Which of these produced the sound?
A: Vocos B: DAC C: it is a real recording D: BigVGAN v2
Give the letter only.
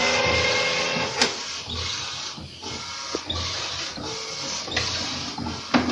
C